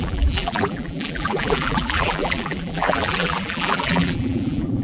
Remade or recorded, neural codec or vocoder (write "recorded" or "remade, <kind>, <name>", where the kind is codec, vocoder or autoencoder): remade, vocoder, BigVGAN v2